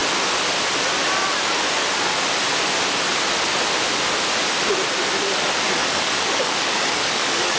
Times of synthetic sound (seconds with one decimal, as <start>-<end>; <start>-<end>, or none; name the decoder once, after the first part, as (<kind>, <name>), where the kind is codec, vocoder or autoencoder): 5.8-7.6 (codec, DAC)